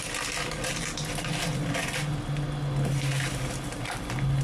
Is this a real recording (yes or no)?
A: yes